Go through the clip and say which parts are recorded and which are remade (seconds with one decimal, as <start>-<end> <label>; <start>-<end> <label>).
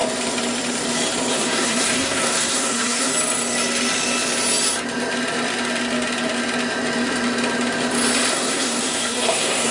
0.0-1.3 recorded; 1.3-3.1 remade; 3.1-8.3 recorded; 8.3-9.7 remade